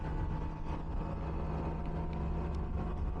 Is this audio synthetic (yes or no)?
no